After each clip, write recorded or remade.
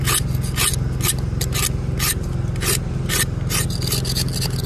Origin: recorded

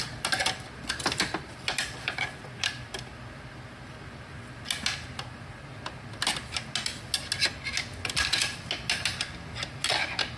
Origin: recorded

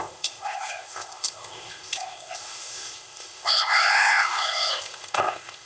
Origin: remade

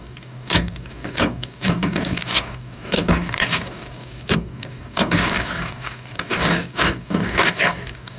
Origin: remade